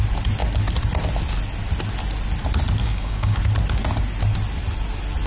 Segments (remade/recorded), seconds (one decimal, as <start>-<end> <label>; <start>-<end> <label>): 0.0-2.8 recorded; 2.8-3.4 remade; 3.4-5.3 recorded